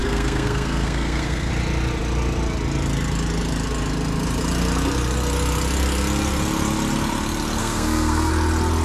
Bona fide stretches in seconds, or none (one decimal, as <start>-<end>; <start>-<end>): 1.5-7.6; 8.3-8.8